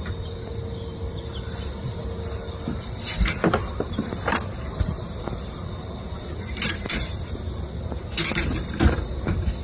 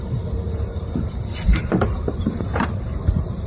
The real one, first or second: first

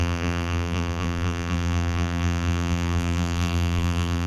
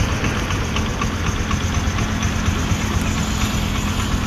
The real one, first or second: second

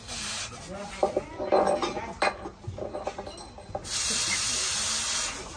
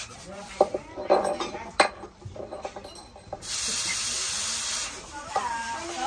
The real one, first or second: first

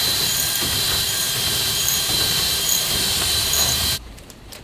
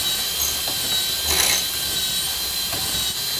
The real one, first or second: second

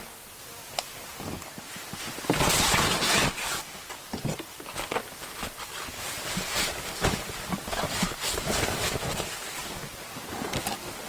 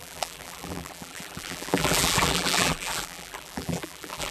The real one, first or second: first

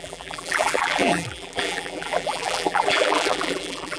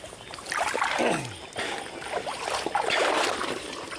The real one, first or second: second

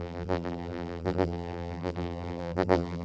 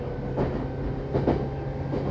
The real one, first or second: second